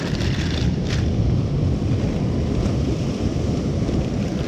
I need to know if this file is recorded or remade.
remade